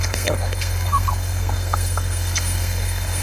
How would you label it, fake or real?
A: fake